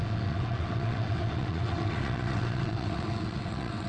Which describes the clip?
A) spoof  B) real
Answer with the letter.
A